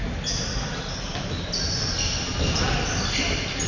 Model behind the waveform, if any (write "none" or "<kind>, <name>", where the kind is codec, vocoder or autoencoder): none